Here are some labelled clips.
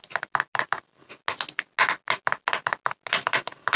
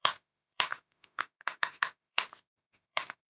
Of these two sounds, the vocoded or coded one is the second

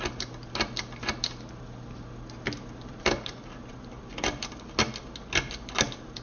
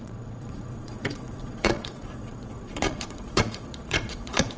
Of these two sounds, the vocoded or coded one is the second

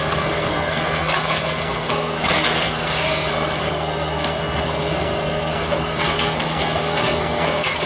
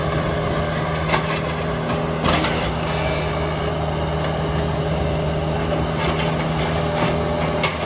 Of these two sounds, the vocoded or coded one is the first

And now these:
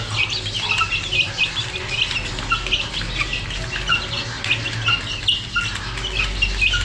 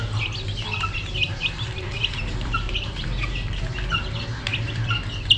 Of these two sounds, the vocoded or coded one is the second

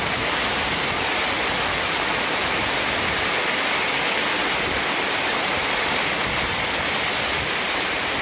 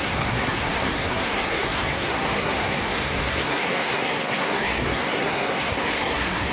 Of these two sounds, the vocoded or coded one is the second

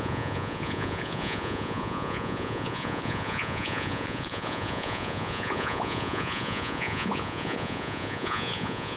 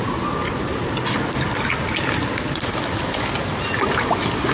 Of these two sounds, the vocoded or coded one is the first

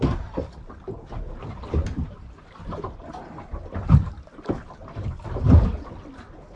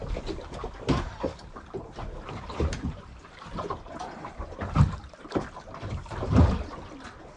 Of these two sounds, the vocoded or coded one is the second